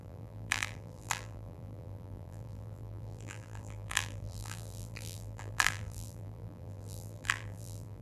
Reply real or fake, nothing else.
fake